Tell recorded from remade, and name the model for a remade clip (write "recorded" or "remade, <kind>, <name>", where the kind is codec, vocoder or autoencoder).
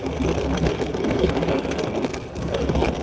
remade, codec, SNAC